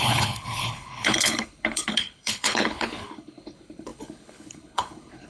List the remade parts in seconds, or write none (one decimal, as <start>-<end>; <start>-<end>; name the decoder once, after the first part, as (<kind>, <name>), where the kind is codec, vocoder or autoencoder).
0.0-5.3 (codec, HILCodec)